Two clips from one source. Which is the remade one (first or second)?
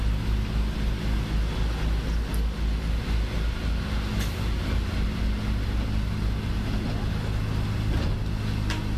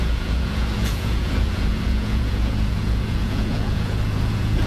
second